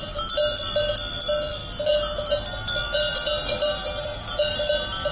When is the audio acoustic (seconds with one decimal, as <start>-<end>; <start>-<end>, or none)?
0.0-5.1